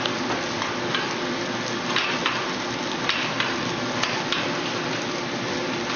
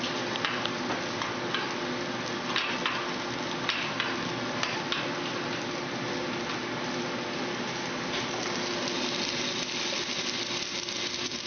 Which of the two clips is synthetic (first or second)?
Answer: first